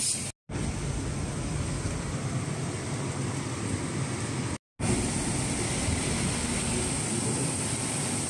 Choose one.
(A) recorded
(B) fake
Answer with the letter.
A